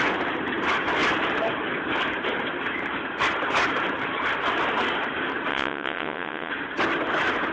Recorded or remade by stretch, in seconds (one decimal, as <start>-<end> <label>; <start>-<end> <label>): 0.0-5.5 recorded; 5.5-6.5 remade; 6.5-7.5 recorded